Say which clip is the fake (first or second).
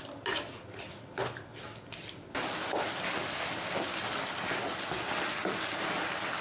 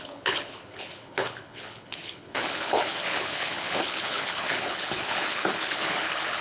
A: second